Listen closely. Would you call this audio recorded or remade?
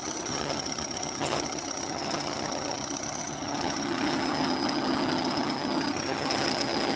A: remade